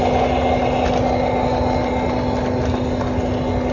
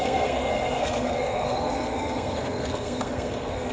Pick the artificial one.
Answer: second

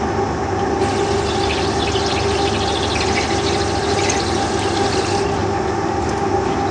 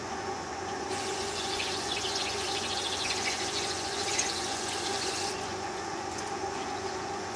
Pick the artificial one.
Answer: second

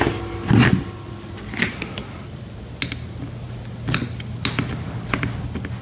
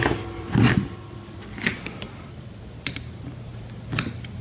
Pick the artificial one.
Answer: second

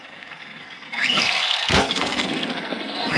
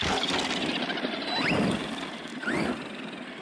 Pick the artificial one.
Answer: first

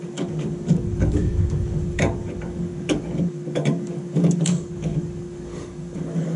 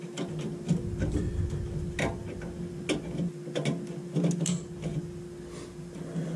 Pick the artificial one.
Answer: first